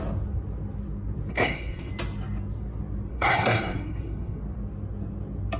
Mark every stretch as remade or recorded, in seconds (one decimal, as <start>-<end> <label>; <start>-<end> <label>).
0.0-1.3 recorded; 1.3-1.9 remade; 1.9-3.1 recorded; 3.1-4.4 remade; 4.4-5.6 recorded